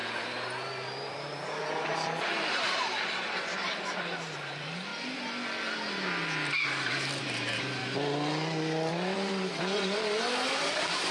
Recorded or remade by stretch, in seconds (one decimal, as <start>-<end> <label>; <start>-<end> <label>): 0.0-4.9 remade; 4.9-7.2 recorded; 7.2-7.8 remade; 7.8-8.9 recorded; 8.9-11.1 remade